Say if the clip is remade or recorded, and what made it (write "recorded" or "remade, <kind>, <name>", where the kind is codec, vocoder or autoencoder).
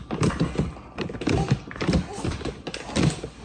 recorded